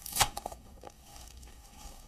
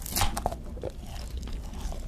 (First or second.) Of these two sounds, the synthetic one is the first